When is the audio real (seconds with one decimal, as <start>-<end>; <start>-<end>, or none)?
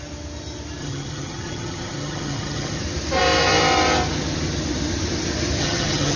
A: 0.0-0.8; 2.8-5.6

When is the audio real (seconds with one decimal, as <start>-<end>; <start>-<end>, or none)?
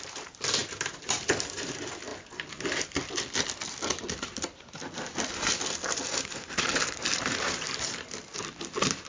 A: none